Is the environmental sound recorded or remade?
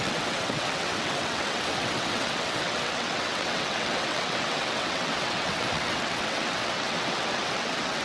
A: remade